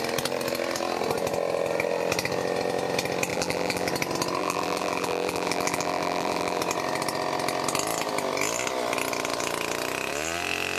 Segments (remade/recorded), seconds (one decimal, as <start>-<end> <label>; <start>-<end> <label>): 0.0-3.3 recorded; 3.3-3.9 remade; 3.9-4.4 recorded; 4.4-6.6 remade; 6.6-10.8 recorded